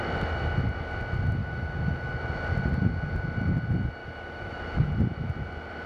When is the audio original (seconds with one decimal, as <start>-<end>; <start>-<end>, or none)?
0.0-1.4; 2.1-4.0; 4.9-5.9